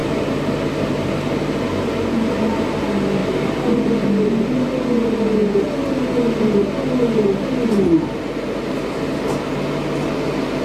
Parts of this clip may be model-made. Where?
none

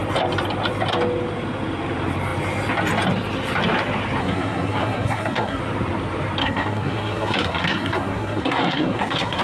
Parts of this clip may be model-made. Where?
4.2-5.6 (codec, SNAC); 6.4-9.4

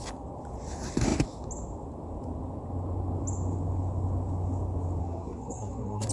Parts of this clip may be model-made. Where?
5.0-6.1 (codec, SNAC)

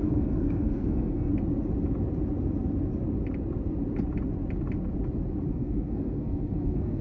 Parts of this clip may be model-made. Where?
0.0-1.3 (codec, SNAC); 5.5-7.0

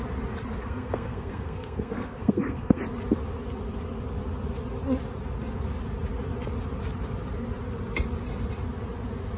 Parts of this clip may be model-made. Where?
0.6-2.8 (codec, SNAC)

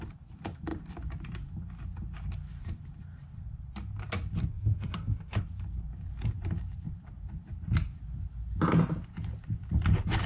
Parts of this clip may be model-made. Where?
4.5-5.4 (codec, SNAC)

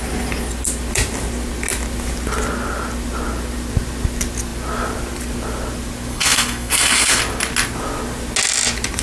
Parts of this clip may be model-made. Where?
6.1-7.2 (codec, SNAC)

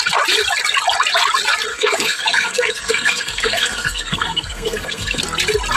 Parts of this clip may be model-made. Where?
1.7-5.2 (codec, SNAC)